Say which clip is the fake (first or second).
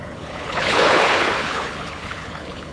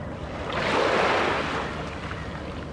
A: first